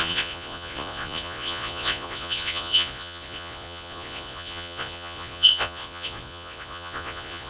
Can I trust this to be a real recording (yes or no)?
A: no